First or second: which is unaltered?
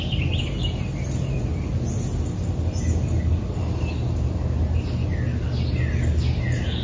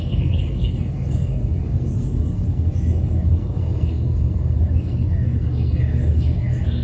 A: first